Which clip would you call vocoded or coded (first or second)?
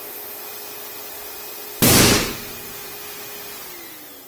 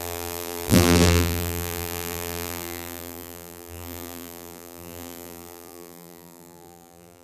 second